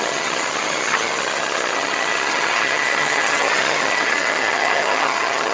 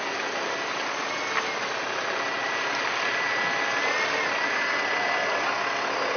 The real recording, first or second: second